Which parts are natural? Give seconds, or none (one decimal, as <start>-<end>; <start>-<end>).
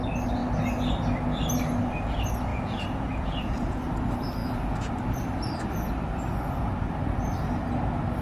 0.0-2.5; 3.9-4.4; 4.9-8.2